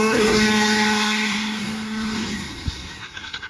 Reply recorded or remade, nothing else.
remade